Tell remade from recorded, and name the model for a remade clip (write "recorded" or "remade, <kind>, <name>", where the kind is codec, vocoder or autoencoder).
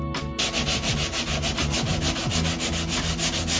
recorded